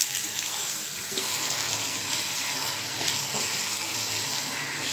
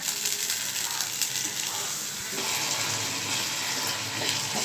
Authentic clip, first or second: second